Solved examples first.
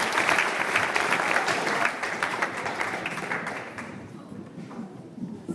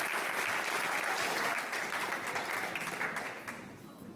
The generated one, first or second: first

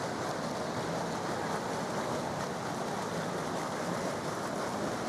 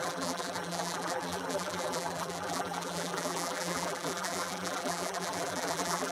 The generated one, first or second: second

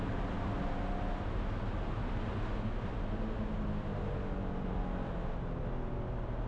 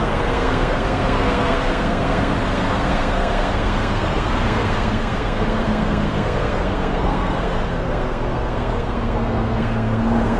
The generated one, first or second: second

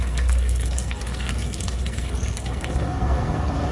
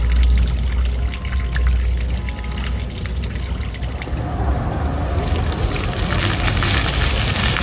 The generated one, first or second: first